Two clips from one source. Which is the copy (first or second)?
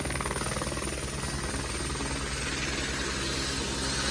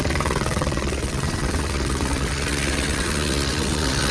second